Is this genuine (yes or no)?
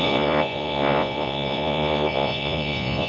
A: no